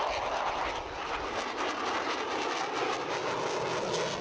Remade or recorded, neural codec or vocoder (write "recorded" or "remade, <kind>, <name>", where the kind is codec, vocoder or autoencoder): recorded